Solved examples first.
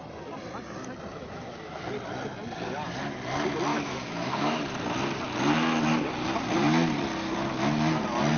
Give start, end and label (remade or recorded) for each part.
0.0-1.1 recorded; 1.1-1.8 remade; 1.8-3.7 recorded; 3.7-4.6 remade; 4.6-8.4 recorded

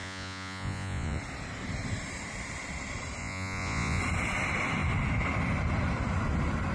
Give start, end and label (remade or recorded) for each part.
0.0-1.2 remade; 1.2-3.2 recorded; 3.2-4.0 remade; 4.0-6.7 recorded

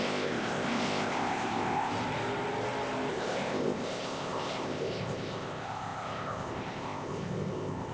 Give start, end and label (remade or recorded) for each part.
0.0-1.9 remade; 1.9-3.1 recorded; 3.1-7.9 remade

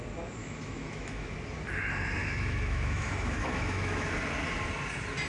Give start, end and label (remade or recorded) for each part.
0.0-0.4 recorded; 0.4-1.3 remade; 1.3-2.2 recorded; 2.2-4.1 remade; 4.1-5.3 recorded

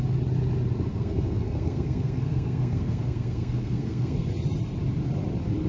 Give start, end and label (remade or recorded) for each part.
0.0-0.9 recorded; 0.9-4.3 remade; 4.3-5.7 recorded

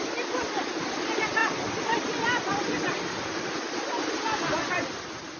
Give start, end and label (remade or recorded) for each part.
0.0-5.4 recorded

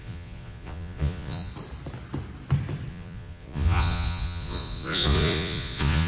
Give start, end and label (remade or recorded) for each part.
0.0-1.5 remade; 1.5-2.9 recorded; 2.9-6.1 remade

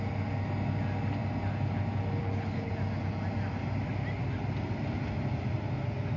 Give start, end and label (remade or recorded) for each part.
0.0-2.2 recorded; 2.2-2.7 remade; 2.7-6.2 recorded